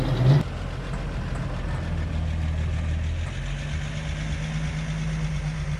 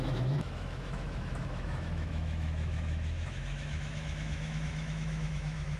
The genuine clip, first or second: first